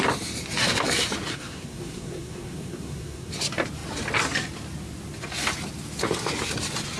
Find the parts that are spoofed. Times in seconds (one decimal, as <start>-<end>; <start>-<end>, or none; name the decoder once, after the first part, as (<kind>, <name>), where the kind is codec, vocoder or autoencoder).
1.3-3.3 (codec, SNAC)